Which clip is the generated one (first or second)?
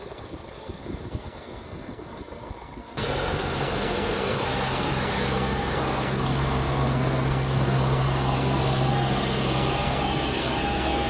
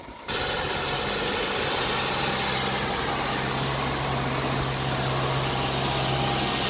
first